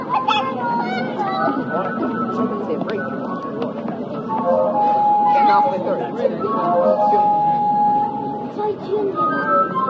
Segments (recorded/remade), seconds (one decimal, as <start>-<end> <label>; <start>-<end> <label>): 0.0-7.2 recorded; 7.2-7.7 remade; 7.7-9.9 recorded